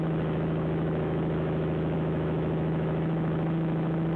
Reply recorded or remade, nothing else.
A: remade